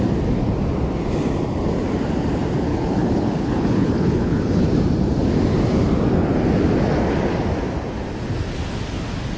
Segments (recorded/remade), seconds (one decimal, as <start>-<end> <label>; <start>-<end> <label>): 0.0-2.7 recorded; 2.7-4.7 remade; 4.7-9.4 recorded